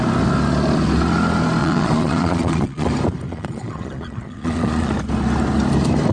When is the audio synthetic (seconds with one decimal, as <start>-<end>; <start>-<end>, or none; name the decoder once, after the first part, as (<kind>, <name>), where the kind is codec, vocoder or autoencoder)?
1.6-2.9 (vocoder, Vocos); 3.3-4.9